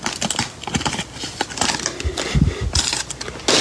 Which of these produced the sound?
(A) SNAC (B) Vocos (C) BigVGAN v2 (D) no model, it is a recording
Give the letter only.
D